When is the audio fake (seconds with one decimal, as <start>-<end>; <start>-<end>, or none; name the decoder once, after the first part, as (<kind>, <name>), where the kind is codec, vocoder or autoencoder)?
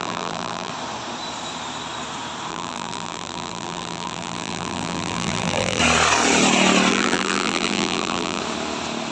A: 0.0-0.7 (vocoder, BigVGAN v2); 2.5-5.8; 6.9-8.4